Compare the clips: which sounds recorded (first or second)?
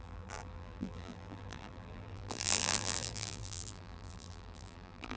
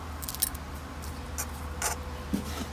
second